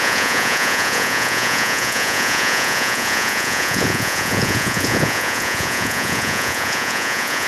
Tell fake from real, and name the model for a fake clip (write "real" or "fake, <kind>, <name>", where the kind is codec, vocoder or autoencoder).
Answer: fake, vocoder, Vocos